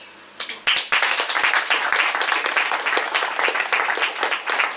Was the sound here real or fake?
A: real